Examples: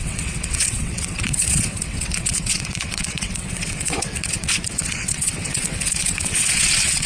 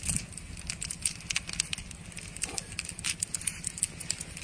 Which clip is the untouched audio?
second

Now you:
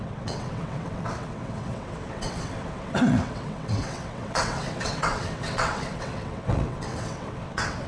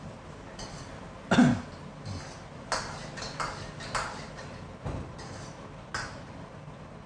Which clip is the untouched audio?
second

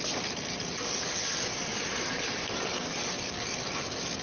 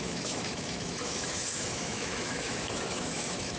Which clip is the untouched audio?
first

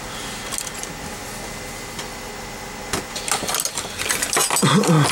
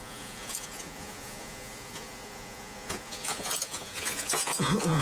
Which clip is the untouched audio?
first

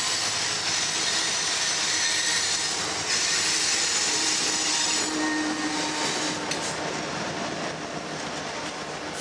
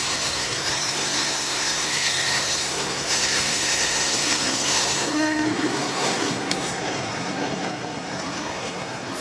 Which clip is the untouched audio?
first